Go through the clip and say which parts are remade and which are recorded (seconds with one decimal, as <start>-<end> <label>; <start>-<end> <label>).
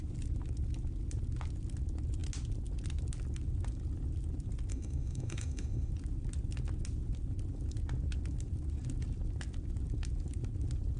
0.0-4.7 recorded; 4.7-5.9 remade; 5.9-11.0 recorded